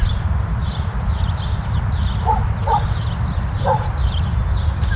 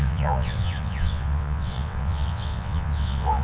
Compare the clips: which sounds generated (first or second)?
second